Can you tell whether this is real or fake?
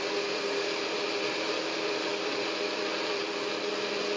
real